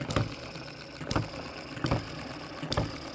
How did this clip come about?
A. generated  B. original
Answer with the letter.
B